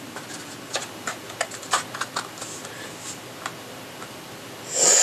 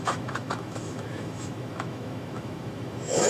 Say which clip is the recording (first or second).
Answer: first